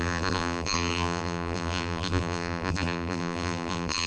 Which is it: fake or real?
fake